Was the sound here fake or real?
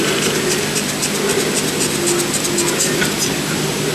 real